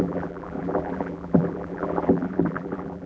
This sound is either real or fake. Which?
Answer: fake